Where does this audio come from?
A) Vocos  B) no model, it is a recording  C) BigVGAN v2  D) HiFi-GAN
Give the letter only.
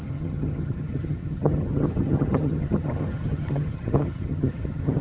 D